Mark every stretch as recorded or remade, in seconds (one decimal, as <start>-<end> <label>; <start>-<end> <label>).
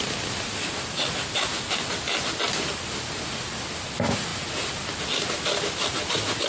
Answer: 0.0-6.5 recorded